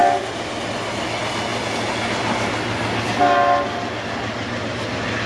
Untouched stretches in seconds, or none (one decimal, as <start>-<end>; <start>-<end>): 0.0-5.3